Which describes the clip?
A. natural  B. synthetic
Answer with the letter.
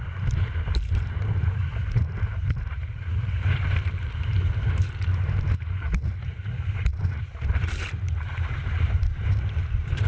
B